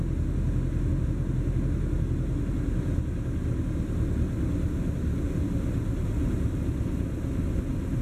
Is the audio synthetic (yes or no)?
no